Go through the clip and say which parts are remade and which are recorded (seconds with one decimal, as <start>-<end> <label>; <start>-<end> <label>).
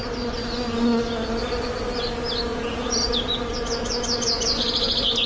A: 0.0-2.5 recorded; 2.5-3.4 remade; 3.4-5.3 recorded